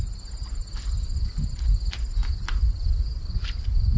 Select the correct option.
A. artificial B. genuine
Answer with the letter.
B